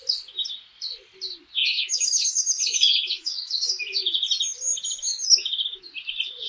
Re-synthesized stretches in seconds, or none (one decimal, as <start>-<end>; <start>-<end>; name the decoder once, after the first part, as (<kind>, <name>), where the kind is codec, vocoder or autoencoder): 1.6-3.8 (autoencoder, DAC-VAE); 5.1-5.8